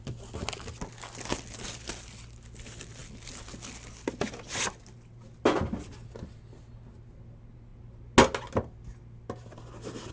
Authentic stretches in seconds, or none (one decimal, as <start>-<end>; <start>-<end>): 0.0-10.1